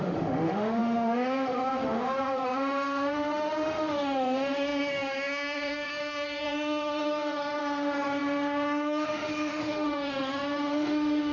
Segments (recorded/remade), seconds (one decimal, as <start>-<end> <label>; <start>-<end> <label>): 0.0-11.3 remade